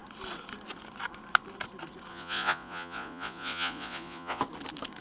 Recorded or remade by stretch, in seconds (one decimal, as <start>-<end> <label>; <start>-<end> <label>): 0.0-2.1 recorded; 2.1-4.4 remade; 4.4-5.0 recorded